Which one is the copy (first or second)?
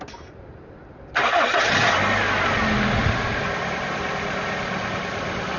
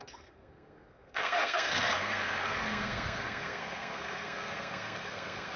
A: second